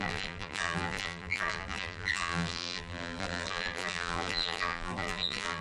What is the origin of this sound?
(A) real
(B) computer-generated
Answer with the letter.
B